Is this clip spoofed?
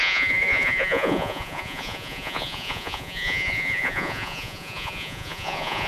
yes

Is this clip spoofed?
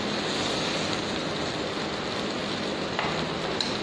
no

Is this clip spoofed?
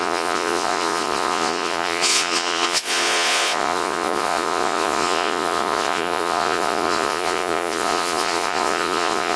yes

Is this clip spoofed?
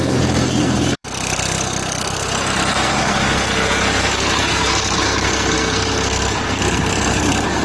yes